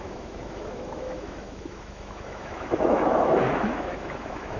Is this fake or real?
fake